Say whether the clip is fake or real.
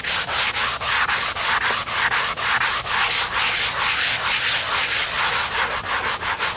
real